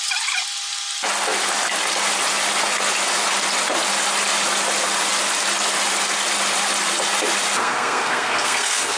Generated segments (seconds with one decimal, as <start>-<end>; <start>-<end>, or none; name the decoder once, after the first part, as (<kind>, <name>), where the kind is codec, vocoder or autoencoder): 7.6-9.0 (codec, SNAC)

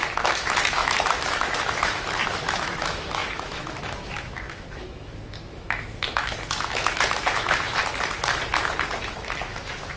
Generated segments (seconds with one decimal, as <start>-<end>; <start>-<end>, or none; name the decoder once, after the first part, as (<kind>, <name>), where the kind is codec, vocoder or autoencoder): 0.0-7.8 (autoencoder, DAC-VAE); 9.0-10.0